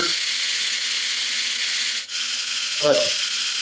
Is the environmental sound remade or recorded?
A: remade